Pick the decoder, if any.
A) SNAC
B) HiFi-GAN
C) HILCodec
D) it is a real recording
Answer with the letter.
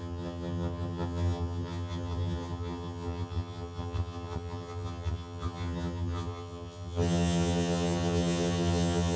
B